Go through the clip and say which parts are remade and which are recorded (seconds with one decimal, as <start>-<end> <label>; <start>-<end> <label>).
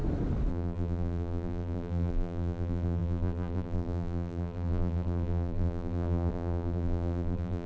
0.0-0.5 recorded; 0.5-7.7 remade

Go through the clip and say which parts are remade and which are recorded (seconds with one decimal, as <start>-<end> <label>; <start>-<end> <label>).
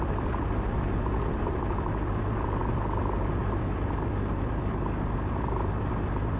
0.0-6.4 recorded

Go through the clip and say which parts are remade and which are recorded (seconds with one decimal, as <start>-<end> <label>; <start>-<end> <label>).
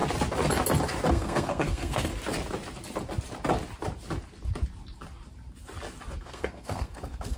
0.0-1.1 recorded; 1.1-2.1 remade; 2.1-6.2 recorded; 6.2-7.4 remade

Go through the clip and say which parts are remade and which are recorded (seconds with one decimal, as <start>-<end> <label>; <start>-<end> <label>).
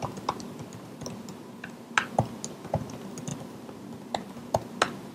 0.0-5.1 recorded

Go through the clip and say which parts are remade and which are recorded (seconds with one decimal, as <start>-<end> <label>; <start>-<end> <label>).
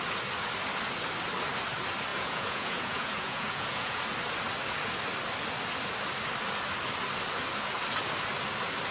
0.0-2.1 recorded; 2.1-4.0 remade; 4.0-8.9 recorded